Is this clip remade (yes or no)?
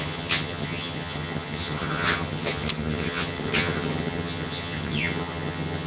yes